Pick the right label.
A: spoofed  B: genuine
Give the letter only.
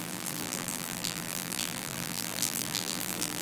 A